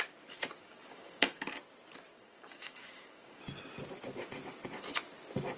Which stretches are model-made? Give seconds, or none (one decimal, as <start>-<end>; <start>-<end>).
0.6-1.5; 2.1-3.4